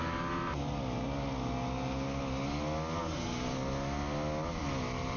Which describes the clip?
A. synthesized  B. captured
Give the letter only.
B